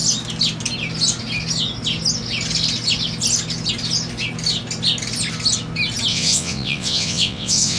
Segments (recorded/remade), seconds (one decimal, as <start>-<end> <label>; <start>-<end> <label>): 0.0-6.1 recorded; 6.1-7.8 remade